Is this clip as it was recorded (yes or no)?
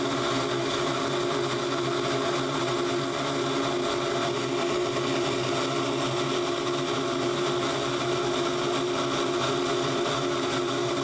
yes